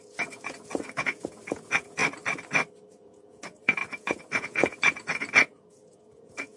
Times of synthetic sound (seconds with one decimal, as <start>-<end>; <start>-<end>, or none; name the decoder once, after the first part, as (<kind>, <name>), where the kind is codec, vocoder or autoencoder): 0.0-2.0 (vocoder, Vocos); 2.9-6.6